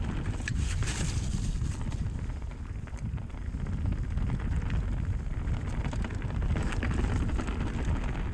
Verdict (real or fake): real